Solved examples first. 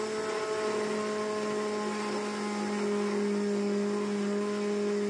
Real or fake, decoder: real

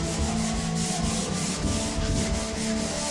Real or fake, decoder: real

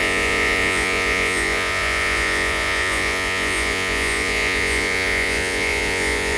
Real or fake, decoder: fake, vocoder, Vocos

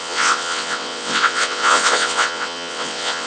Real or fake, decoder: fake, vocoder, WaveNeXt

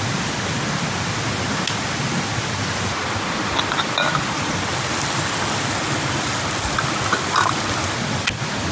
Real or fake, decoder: real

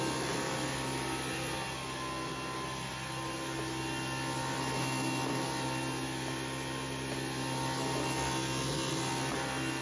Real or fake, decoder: real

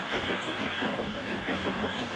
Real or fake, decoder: fake, codec, DAC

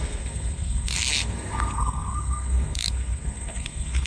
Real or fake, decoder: fake, codec, SNAC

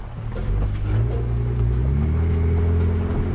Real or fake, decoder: real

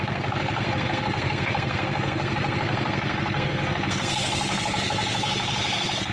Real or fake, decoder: fake, codec, SNAC